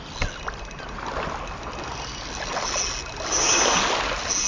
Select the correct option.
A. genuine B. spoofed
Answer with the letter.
A